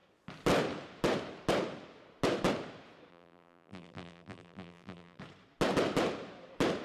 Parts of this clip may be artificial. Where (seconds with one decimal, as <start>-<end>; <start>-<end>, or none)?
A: 3.1-5.2